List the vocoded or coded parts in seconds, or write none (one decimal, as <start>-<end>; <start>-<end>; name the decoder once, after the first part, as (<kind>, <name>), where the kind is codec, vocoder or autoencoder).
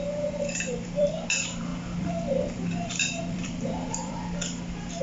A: 0.0-5.0 (vocoder, BigVGAN v2)